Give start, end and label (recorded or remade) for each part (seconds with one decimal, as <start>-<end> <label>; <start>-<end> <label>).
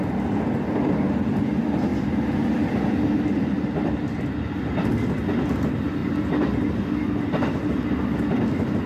0.0-8.9 recorded